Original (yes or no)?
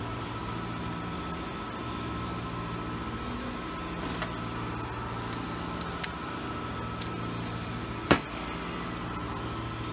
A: yes